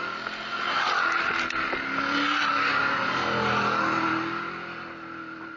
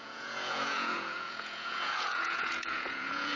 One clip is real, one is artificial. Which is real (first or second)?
first